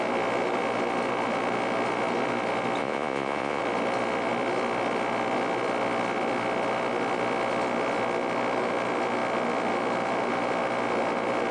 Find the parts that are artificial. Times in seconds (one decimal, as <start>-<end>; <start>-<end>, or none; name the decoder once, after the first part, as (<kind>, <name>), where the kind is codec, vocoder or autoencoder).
2.8-3.6 (vocoder, Vocos)